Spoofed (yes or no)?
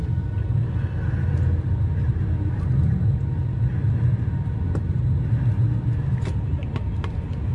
no